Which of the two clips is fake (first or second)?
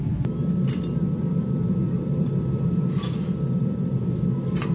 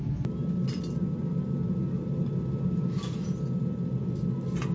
first